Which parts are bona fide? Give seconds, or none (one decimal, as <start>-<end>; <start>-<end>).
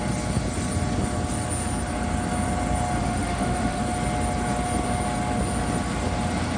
0.0-3.0; 3.8-6.6